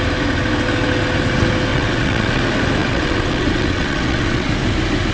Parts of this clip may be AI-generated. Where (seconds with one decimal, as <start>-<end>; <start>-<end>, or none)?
1.7-2.4; 2.8-4.5